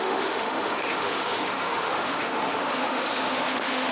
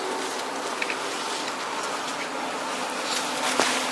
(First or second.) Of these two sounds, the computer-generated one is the first